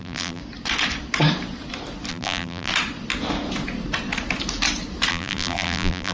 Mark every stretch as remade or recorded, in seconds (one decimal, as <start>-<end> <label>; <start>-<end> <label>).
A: 0.0-0.4 remade; 0.4-2.1 recorded; 2.1-2.7 remade; 2.7-5.1 recorded; 5.1-6.1 remade